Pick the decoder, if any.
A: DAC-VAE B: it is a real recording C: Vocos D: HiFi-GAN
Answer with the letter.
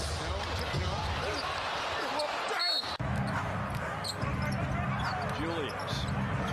B